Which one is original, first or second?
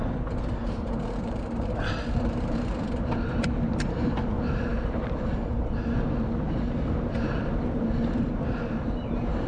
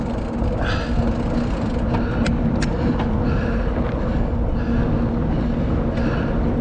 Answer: second